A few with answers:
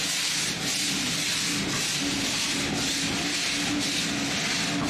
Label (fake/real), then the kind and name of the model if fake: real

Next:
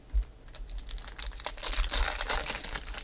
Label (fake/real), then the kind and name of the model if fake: real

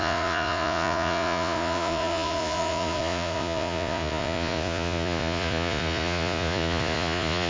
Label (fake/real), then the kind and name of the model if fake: fake, vocoder, Vocos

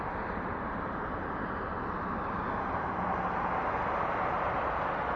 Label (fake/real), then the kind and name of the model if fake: real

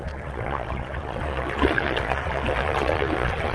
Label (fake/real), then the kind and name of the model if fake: fake, vocoder, Vocos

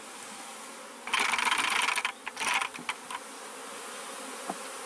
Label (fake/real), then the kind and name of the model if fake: real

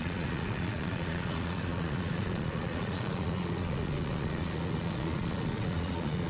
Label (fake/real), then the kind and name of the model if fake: fake, vocoder, Vocos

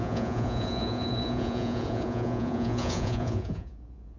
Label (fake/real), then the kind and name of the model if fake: fake, vocoder, Vocos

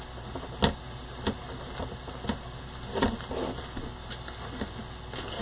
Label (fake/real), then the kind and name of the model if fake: real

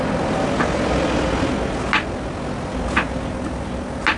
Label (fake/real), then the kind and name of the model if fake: real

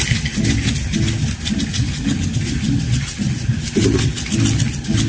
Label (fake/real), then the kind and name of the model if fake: real